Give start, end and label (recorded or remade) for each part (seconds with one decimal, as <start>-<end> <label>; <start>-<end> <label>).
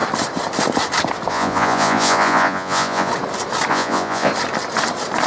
0.0-1.3 recorded; 1.3-3.1 remade; 3.1-3.7 recorded; 3.7-4.3 remade; 4.3-5.3 recorded